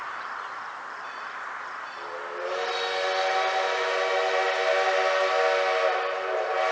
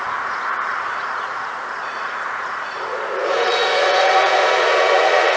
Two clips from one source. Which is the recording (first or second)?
first